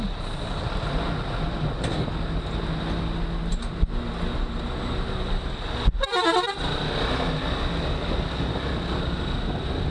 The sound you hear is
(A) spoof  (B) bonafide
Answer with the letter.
B